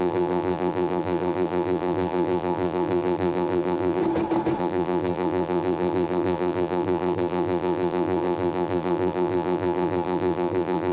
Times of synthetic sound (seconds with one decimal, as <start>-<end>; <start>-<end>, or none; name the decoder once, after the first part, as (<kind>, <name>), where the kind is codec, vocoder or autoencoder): 0.0-4.0 (vocoder, BigVGAN v2); 4.6-10.9